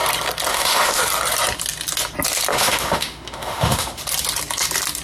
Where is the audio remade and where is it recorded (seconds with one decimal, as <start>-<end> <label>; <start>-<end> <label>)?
0.0-0.5 recorded; 0.5-1.0 remade; 1.0-2.5 recorded; 2.5-4.0 remade; 4.0-5.0 recorded